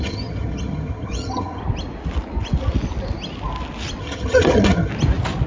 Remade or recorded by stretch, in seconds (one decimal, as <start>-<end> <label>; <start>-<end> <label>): 0.0-1.6 remade; 1.6-4.0 recorded; 4.0-4.9 remade; 4.9-5.5 recorded